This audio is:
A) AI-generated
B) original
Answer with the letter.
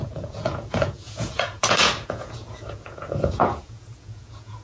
A